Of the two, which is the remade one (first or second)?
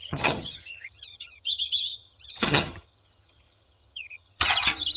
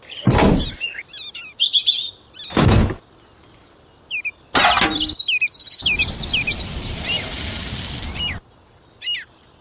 first